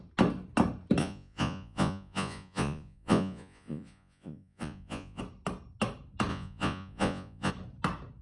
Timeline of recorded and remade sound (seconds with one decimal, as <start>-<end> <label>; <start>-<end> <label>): 0.0-1.0 recorded; 1.0-5.2 remade; 5.2-6.3 recorded; 6.3-7.5 remade; 7.5-8.2 recorded